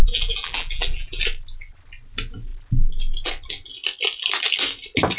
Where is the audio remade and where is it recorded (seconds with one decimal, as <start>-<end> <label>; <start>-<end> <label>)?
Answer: 0.0-1.2 remade; 1.2-5.2 recorded